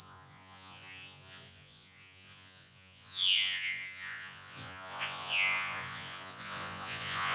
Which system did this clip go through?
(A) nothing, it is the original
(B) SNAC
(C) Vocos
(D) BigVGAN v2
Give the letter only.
C